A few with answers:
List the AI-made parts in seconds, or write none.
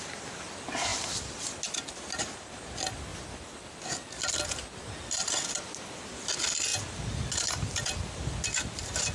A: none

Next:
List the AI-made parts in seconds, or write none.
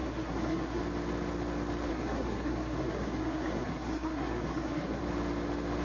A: 0.0-0.8; 1.9-5.0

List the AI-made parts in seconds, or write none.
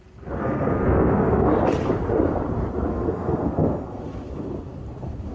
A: 0.4-1.5; 2.9-4.0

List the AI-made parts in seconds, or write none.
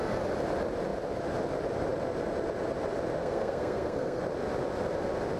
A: 3.2-4.2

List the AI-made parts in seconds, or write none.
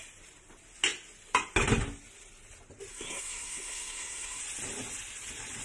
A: 2.9-4.4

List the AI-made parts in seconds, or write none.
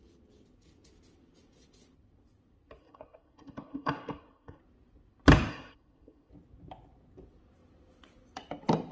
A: 2.8-4.6; 5.5-6.3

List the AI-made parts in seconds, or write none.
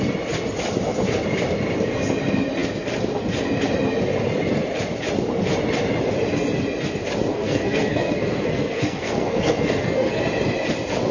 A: 7.3-10.2